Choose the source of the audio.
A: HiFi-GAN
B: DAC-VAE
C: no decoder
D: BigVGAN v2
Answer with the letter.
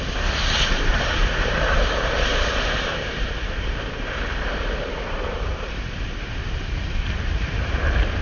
D